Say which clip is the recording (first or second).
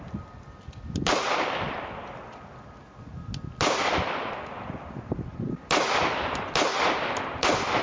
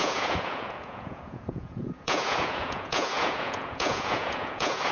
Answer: first